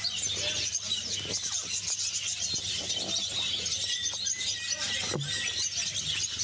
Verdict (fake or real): real